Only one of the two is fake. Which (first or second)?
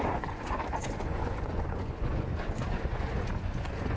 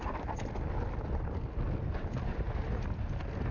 first